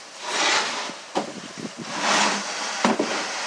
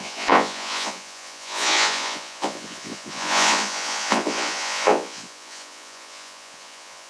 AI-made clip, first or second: second